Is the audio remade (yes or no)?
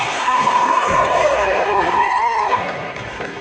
yes